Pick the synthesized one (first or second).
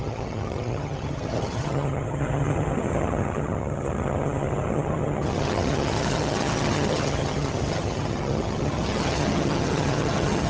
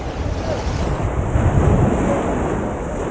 first